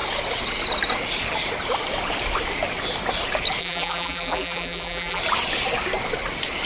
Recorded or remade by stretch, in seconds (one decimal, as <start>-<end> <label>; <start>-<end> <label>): 0.0-3.6 recorded; 3.6-5.2 remade; 5.2-6.7 recorded

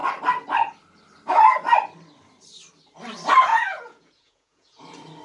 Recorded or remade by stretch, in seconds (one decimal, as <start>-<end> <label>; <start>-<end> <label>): 0.0-3.5 recorded; 3.5-4.8 remade; 4.8-5.2 recorded

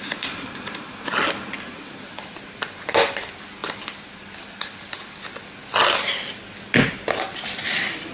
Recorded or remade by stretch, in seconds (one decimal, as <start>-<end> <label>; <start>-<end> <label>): 0.0-8.1 recorded

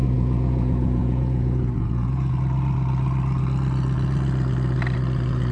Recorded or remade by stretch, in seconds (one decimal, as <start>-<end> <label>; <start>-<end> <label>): 0.0-2.3 remade; 2.3-5.5 recorded

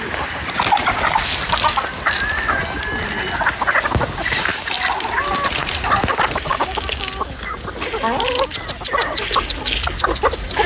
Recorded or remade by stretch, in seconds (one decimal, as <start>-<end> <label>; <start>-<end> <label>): 0.0-6.5 recorded; 6.5-7.1 remade; 7.1-10.7 recorded